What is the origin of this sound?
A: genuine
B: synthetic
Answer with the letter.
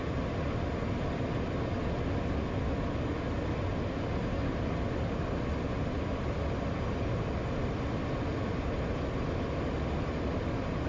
A